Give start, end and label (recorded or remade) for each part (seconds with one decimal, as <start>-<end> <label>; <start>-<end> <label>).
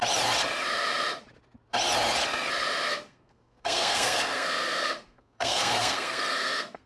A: 0.0-2.9 recorded; 2.9-6.9 remade